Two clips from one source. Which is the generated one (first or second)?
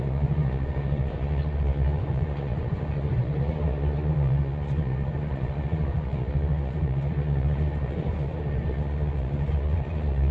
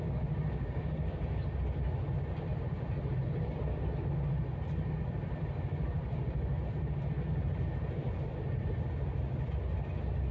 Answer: first